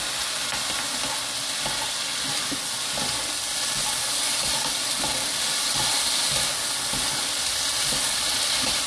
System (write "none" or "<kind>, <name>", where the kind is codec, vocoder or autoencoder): none